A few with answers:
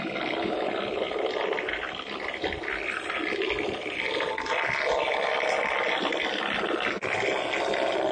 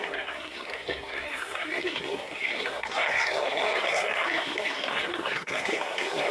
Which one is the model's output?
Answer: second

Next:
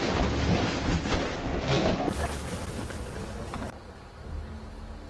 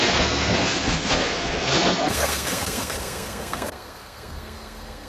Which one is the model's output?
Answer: second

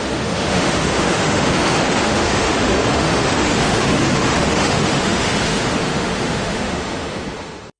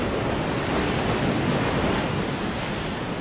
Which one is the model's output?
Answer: first